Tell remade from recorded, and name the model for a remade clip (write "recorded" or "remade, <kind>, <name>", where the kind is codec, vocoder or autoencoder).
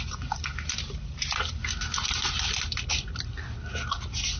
recorded